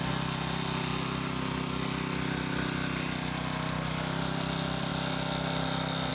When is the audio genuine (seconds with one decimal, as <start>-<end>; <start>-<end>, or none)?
0.0-6.1